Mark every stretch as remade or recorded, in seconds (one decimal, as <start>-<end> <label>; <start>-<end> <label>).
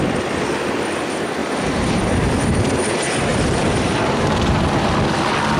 0.0-1.4 recorded; 1.4-2.8 remade; 2.8-3.3 recorded; 3.3-4.6 remade; 4.6-5.6 recorded